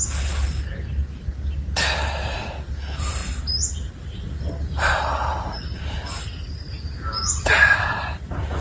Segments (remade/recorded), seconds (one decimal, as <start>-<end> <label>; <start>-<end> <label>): 0.0-8.6 recorded